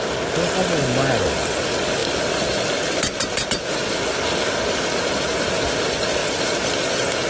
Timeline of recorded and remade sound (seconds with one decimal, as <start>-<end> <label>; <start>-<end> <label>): 0.0-6.2 recorded; 6.2-7.3 remade